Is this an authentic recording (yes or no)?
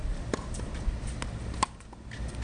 yes